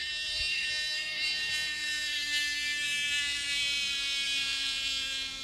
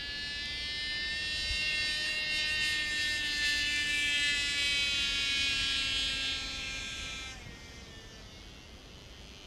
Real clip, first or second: second